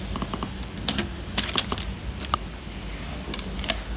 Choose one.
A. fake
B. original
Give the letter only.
B